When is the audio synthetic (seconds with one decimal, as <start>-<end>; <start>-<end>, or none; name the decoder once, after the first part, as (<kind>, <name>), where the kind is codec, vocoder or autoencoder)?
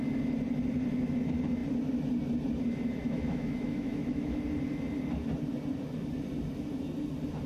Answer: 3.0-4.4 (autoencoder, DAC-VAE)